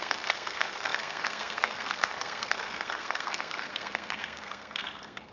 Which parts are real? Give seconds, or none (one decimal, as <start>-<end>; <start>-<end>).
none